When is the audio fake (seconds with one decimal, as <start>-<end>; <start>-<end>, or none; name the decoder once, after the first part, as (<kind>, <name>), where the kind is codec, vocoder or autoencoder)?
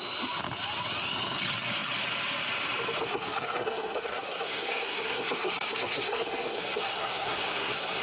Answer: 3.1-8.0 (codec, SNAC)